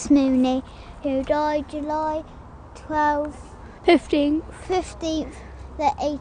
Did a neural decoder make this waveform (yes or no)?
no